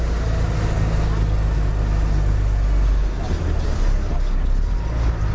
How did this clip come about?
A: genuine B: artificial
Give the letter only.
A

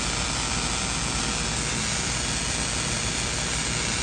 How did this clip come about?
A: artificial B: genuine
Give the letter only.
B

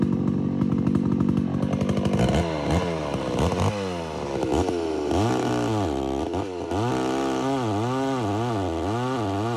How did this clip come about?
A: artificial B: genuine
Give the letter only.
B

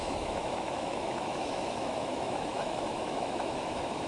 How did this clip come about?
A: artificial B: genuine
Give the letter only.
A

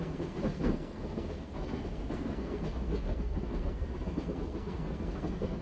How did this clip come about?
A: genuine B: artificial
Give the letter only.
B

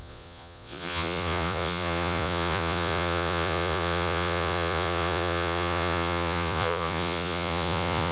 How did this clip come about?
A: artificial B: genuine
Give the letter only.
A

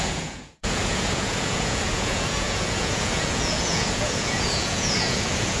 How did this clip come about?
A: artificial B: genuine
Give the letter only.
A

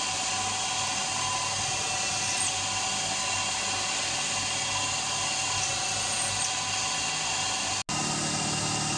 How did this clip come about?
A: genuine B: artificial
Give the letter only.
A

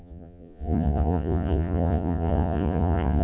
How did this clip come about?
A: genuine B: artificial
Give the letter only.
B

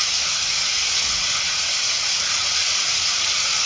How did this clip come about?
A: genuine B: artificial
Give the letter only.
B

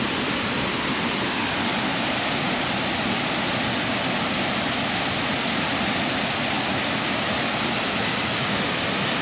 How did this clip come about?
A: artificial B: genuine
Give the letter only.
B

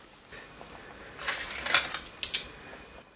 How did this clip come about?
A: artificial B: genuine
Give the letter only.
B